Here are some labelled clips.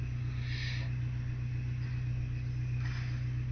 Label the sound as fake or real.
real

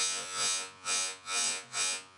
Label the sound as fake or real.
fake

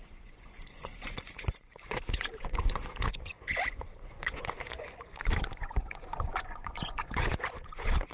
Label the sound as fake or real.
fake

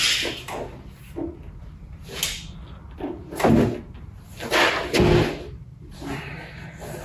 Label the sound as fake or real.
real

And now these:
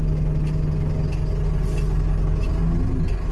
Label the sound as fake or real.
real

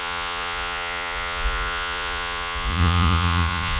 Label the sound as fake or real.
fake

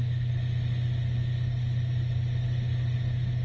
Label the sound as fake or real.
real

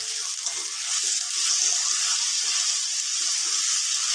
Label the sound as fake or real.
real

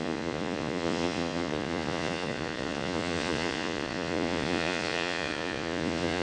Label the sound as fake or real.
fake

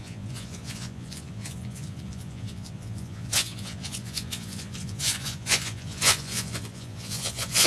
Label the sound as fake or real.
fake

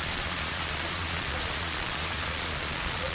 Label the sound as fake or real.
fake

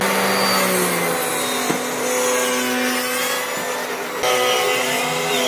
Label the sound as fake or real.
real